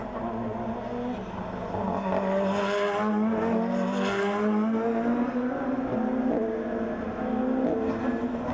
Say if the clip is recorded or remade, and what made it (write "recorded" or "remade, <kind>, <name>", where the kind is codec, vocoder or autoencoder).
recorded